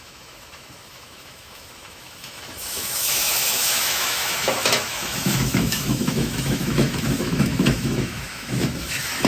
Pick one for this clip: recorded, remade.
remade